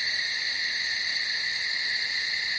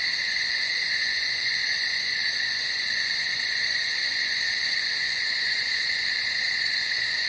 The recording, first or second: first